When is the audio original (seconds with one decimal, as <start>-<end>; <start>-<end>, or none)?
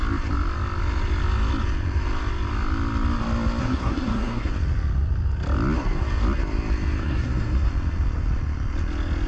0.0-3.6; 4.5-7.0; 7.7-9.3